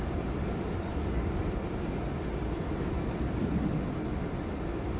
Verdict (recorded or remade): recorded